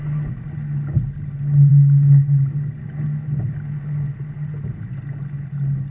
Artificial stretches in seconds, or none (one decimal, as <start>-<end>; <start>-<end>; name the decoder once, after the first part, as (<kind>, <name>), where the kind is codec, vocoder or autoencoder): none